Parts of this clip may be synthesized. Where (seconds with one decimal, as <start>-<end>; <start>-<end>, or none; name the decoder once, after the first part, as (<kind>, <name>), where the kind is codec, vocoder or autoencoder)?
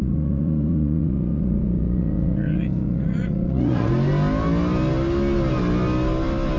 0.0-3.9 (vocoder, Vocos)